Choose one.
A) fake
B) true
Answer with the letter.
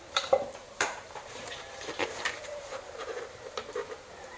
A